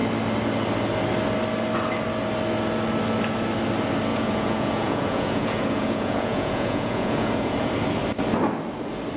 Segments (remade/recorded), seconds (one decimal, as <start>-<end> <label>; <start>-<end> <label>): 0.0-4.1 recorded; 4.1-7.7 remade; 7.7-9.2 recorded

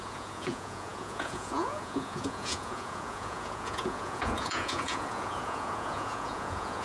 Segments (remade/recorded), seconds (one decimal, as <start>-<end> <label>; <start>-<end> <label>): 0.0-6.8 remade

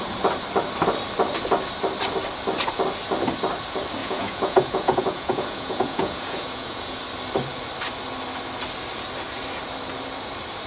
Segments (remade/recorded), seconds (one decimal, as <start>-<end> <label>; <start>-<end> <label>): 0.0-4.0 recorded; 4.0-7.0 remade; 7.0-10.7 recorded

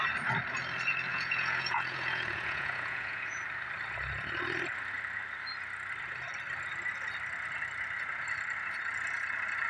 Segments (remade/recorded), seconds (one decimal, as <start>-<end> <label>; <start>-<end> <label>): 0.0-1.1 recorded; 1.1-3.4 remade; 3.4-9.7 recorded

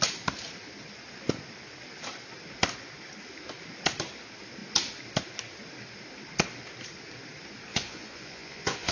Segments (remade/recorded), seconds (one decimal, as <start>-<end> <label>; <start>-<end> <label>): 0.0-7.7 recorded; 7.7-8.9 remade